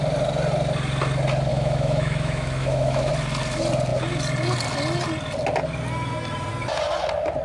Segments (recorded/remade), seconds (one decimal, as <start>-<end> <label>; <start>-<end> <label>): 0.0-1.5 recorded; 1.5-3.1 remade; 3.1-7.4 recorded